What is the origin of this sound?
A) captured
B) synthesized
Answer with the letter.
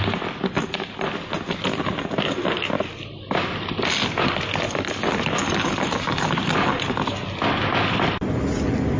A